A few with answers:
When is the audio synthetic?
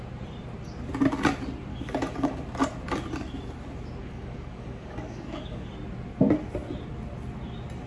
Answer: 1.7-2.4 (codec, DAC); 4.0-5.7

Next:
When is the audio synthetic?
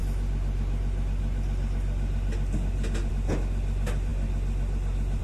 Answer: none